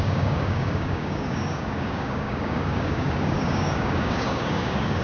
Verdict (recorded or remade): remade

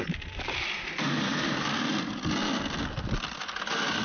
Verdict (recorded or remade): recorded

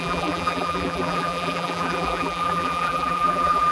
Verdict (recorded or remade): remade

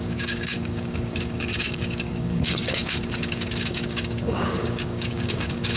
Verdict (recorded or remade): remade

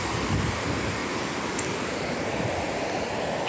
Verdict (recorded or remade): recorded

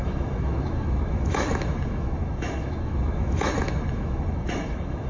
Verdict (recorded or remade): remade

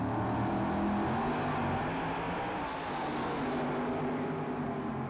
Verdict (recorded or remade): recorded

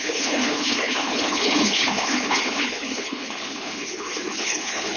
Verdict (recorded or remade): remade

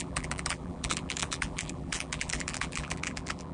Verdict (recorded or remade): remade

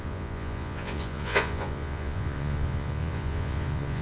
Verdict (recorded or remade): remade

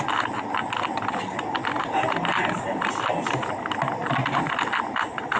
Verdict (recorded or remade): recorded